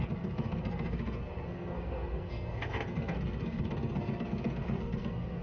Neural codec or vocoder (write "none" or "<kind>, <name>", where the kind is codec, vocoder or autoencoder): codec, SNAC